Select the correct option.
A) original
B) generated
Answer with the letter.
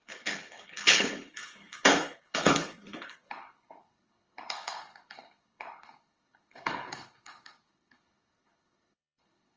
B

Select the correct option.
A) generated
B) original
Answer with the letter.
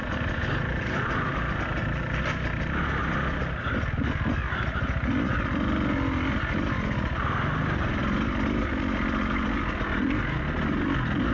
B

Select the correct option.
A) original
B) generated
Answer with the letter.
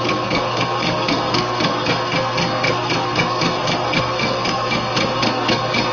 B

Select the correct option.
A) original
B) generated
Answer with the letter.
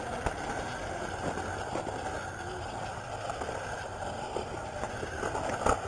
A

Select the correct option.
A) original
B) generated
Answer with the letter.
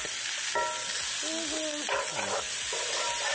A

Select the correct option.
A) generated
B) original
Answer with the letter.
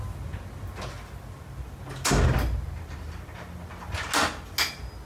B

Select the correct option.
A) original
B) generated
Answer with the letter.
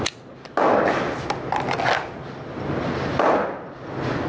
A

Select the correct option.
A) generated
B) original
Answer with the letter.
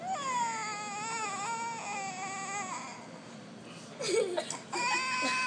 B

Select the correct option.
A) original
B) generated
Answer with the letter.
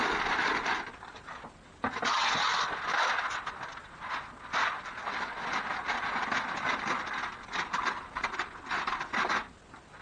A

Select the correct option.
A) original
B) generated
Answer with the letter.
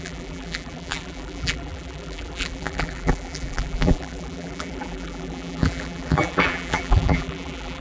B